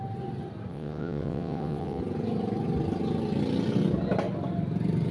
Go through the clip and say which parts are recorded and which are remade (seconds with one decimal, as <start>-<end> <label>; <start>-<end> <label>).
0.0-0.7 recorded; 0.7-2.0 remade; 2.0-5.1 recorded